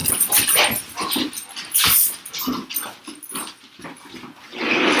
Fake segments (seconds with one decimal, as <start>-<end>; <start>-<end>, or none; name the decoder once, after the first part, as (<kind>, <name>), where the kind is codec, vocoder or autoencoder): none